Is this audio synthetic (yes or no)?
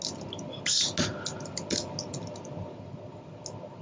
no